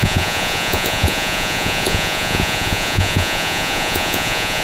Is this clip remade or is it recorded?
remade